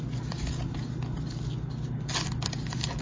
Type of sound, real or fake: real